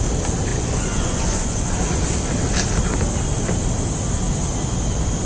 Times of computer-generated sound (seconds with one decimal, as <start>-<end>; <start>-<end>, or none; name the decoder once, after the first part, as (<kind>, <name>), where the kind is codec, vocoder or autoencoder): 0.5-1.7 (vocoder, Vocos)